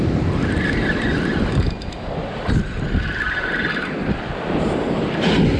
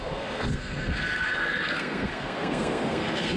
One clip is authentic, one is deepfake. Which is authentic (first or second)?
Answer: first